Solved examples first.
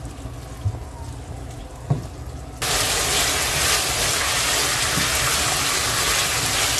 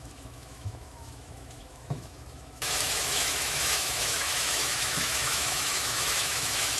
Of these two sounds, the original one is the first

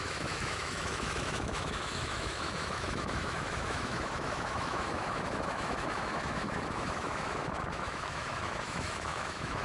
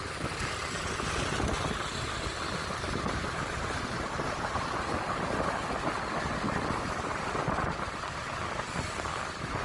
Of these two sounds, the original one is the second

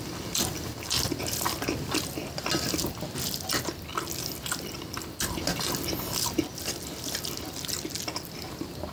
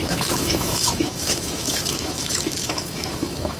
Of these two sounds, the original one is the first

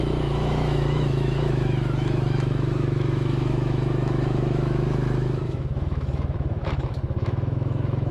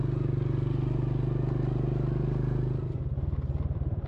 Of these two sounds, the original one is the second